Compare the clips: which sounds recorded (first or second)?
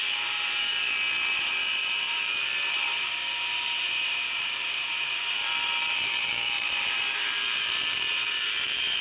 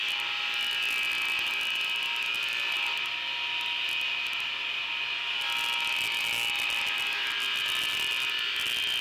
second